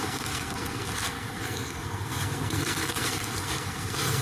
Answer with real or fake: fake